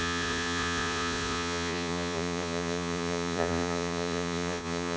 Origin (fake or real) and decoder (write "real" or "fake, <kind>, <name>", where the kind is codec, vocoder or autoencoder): fake, vocoder, Vocos